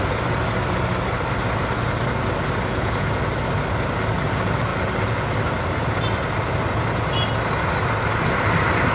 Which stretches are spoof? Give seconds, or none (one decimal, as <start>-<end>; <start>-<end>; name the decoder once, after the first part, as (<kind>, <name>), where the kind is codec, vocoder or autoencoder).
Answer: 2.7-3.2 (vocoder, Vocos)